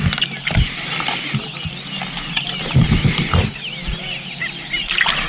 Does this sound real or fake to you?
real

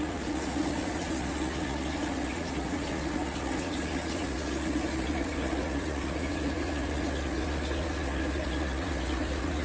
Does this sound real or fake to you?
fake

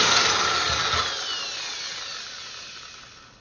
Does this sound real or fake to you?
real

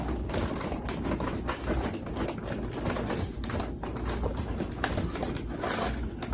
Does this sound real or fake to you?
real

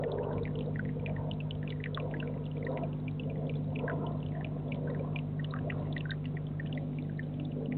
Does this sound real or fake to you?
real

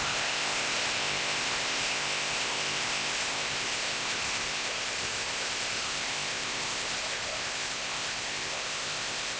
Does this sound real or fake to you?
fake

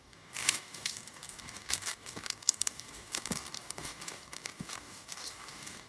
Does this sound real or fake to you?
fake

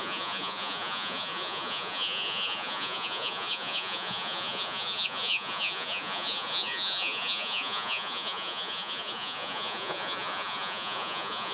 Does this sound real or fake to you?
fake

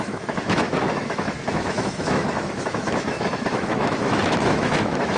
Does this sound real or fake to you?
fake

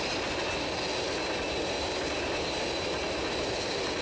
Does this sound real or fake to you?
real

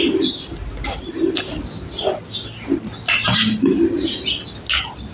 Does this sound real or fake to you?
real